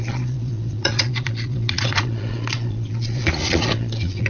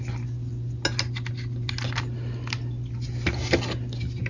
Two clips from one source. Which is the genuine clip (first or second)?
second